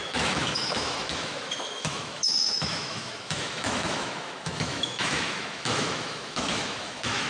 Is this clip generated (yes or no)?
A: yes